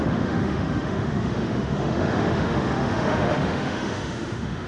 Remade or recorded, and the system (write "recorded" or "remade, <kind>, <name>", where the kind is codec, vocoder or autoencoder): remade, autoencoder, DAC-VAE